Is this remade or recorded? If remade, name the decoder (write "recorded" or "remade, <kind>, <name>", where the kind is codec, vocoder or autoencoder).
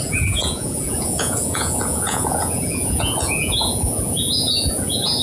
remade, vocoder, Vocos